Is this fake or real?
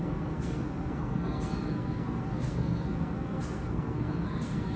fake